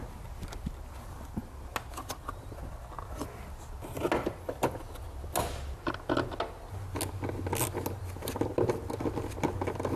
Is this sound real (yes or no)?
yes